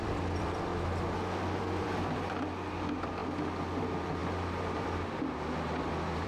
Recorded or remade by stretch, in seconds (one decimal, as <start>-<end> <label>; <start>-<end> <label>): 0.0-0.7 remade; 0.7-1.6 recorded; 1.6-3.2 remade; 3.2-3.8 recorded; 3.8-6.3 remade

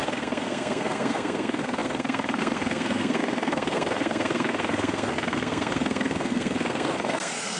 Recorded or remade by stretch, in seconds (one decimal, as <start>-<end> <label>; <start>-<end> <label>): 0.0-7.6 remade

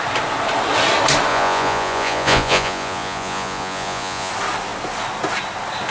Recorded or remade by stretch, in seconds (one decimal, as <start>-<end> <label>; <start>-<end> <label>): 0.0-1.3 recorded; 1.3-4.3 remade; 4.3-5.9 recorded